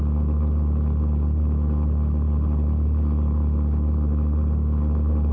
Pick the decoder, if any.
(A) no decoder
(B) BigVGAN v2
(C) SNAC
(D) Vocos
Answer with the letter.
A